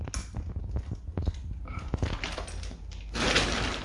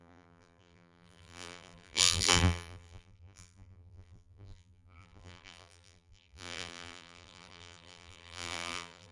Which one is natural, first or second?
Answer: first